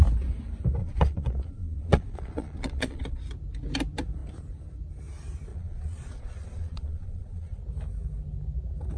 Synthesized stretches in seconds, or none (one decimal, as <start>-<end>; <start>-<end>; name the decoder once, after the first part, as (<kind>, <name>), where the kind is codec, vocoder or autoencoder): 0.8-3.2 (vocoder, Vocos); 5.5-7.6